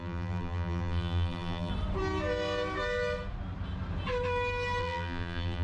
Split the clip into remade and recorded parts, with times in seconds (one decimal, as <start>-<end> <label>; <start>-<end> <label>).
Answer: 0.0-1.7 remade; 1.7-4.8 recorded; 4.8-5.6 remade